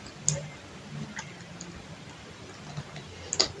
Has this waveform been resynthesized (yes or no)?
no